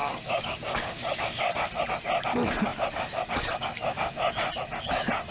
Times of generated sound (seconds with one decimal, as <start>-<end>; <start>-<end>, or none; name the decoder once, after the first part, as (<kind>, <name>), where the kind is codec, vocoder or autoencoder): 0.0-1.4 (codec, DAC)